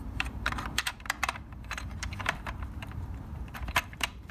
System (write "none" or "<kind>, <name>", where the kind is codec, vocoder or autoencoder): vocoder, BigVGAN v2